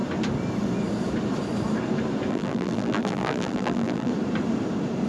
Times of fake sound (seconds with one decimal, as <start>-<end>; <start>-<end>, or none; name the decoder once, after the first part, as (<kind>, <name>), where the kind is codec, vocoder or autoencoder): 2.3-4.1 (vocoder, BigVGAN v2)